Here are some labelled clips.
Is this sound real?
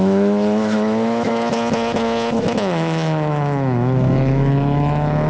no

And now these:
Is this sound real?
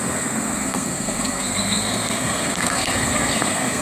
no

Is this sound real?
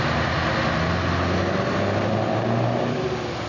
yes